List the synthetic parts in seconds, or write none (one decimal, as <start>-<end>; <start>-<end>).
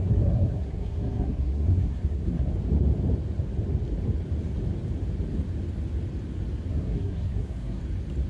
0.0-2.5; 6.7-7.8